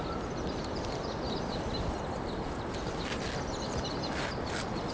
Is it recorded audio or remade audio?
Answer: recorded